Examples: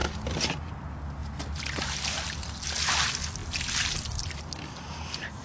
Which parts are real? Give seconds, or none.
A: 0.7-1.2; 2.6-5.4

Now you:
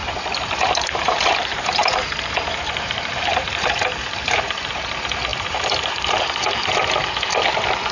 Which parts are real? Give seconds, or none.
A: 4.7-5.3; 6.4-7.9

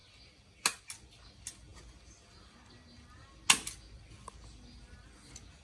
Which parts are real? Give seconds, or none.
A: 0.0-5.6

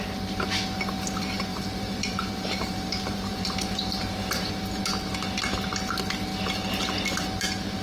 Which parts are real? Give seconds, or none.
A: 0.0-1.5; 4.5-7.8

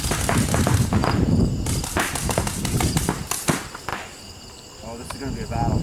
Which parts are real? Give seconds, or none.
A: 0.0-1.0; 3.5-3.9; 4.4-5.8

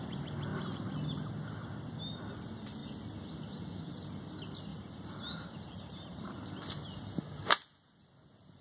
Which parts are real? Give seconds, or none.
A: 0.0-4.7; 6.3-8.6

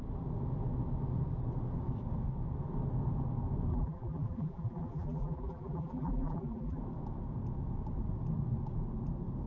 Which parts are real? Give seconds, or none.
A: 0.0-3.7; 6.8-9.5